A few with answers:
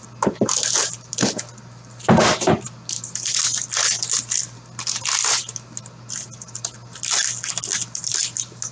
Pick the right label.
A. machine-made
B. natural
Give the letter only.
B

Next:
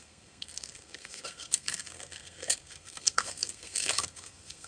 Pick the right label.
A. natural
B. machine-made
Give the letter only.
B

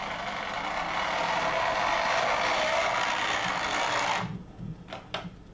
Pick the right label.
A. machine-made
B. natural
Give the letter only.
B